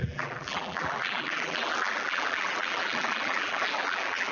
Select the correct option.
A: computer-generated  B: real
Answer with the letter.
A